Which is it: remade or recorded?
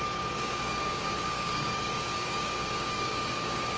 remade